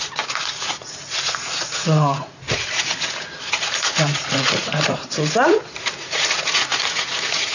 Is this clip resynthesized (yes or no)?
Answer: yes